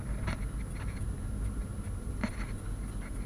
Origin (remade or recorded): recorded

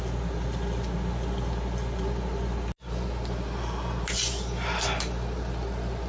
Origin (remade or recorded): recorded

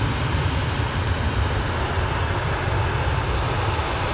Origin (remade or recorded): recorded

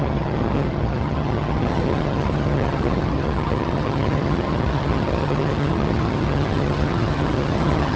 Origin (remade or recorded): remade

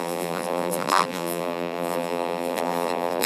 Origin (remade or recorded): remade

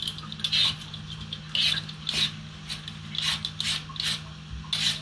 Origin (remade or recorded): recorded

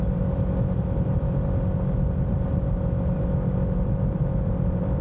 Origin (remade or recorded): recorded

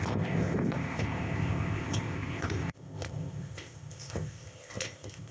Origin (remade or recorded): remade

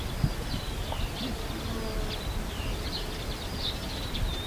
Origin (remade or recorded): recorded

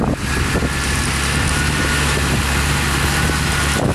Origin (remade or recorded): recorded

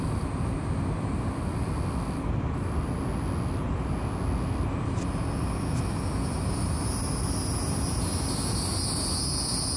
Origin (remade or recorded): recorded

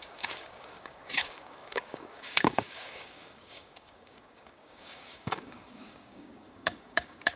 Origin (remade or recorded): remade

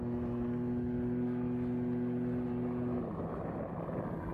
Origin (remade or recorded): recorded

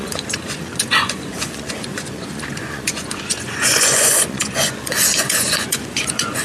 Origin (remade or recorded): remade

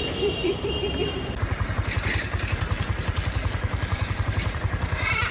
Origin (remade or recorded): remade